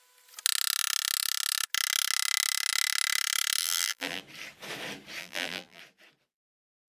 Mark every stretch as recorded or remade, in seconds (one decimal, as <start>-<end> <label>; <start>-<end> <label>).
0.0-3.6 recorded; 3.6-4.2 remade; 4.2-5.2 recorded; 5.2-5.8 remade; 5.8-6.9 recorded